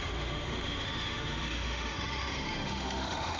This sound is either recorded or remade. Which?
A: remade